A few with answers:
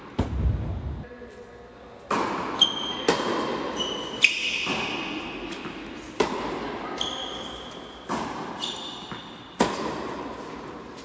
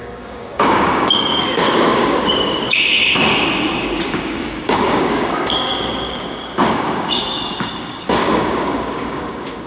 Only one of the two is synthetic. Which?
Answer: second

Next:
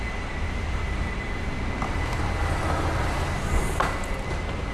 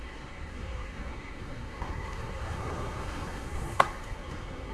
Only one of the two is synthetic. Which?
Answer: second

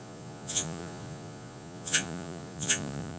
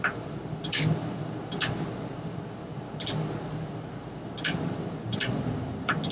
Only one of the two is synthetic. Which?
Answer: first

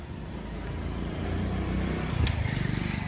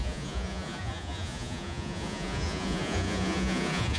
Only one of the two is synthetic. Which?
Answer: second